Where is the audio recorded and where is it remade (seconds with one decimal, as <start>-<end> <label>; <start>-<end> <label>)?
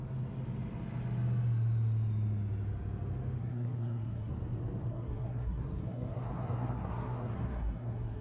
0.0-3.4 recorded; 3.4-4.3 remade; 4.3-4.9 recorded; 4.9-8.2 remade